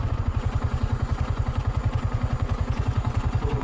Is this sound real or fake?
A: fake